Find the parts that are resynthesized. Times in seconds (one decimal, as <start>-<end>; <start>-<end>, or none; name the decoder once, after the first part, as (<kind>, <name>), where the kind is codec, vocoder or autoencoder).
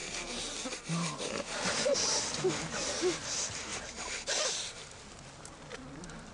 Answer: none